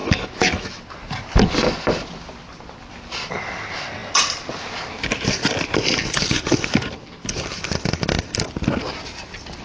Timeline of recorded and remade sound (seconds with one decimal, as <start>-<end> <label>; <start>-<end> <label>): 0.0-0.8 remade; 0.8-9.6 recorded